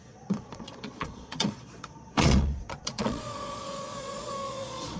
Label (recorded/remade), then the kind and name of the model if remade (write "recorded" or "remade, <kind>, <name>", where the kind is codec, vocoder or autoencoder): remade, vocoder, Vocos